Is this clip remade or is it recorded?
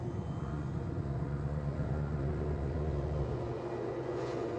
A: remade